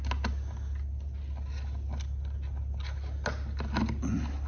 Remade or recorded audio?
recorded